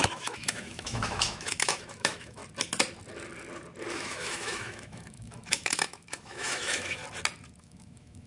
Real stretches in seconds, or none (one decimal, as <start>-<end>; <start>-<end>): 2.4-3.9; 7.0-7.6